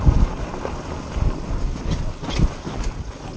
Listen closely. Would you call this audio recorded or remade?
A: recorded